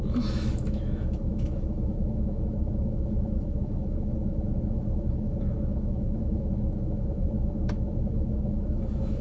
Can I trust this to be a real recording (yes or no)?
no